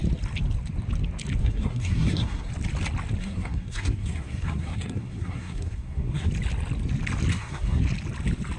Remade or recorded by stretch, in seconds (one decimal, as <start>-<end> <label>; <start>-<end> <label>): 0.0-1.4 recorded; 1.4-2.5 remade; 2.5-3.2 recorded; 3.2-6.3 remade; 6.3-7.3 recorded; 7.3-7.8 remade; 7.8-8.6 recorded